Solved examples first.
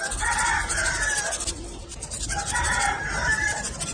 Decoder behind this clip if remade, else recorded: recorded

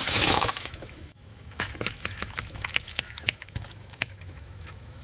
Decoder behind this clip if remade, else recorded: remade, autoencoder, DAC-VAE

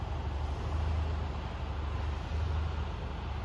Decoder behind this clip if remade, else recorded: recorded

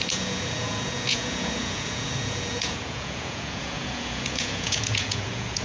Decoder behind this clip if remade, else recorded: remade, vocoder, Vocos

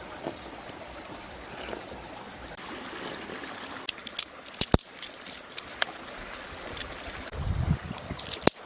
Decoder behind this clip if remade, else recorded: recorded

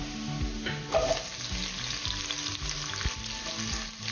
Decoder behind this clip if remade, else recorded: recorded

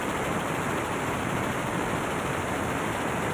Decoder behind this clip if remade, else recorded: recorded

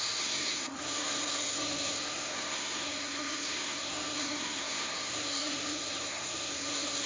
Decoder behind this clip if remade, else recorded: remade, codec, SNAC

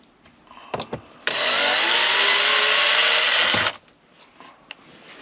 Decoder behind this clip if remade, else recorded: recorded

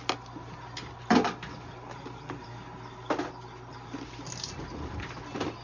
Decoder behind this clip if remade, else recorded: recorded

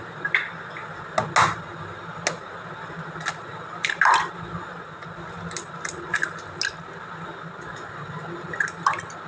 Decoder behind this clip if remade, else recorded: recorded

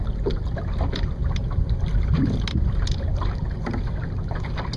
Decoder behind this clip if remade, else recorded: recorded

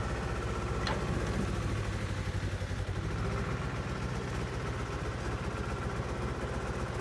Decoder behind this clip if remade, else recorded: recorded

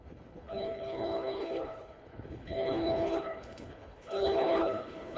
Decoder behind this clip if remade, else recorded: remade, codec, HILCodec